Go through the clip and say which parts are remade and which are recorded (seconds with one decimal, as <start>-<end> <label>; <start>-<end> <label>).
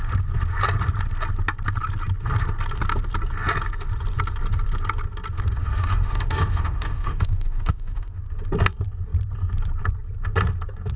0.0-5.6 recorded; 5.6-8.2 remade; 8.2-11.0 recorded